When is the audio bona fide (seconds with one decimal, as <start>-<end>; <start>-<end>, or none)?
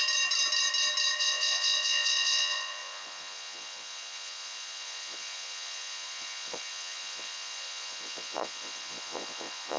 0.0-1.2